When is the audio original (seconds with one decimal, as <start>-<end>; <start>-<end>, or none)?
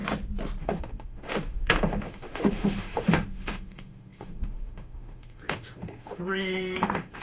0.0-0.6